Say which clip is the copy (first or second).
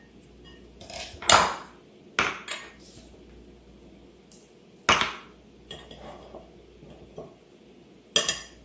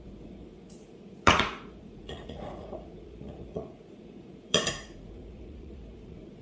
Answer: second